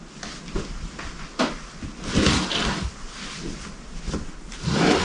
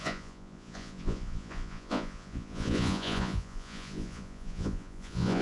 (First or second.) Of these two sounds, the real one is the first